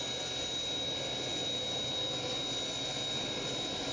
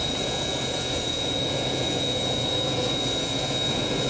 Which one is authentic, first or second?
first